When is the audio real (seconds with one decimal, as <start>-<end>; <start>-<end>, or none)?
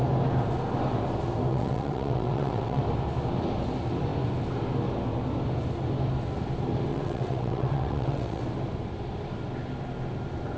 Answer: 0.0-1.5; 2.8-6.9; 8.4-10.6